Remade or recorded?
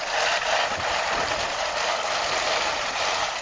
recorded